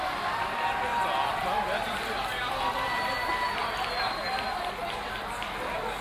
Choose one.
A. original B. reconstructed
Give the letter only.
A